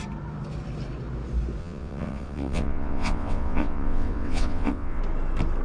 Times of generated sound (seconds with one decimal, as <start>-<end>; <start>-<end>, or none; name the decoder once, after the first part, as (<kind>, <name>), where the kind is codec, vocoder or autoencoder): 1.6-5.0 (vocoder, WaveNeXt)